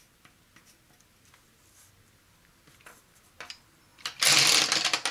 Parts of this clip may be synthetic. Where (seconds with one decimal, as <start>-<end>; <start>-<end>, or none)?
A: none